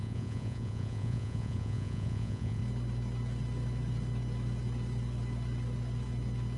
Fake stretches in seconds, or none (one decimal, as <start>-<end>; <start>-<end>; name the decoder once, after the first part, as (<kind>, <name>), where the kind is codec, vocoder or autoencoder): 0.0-2.6 (vocoder, Vocos)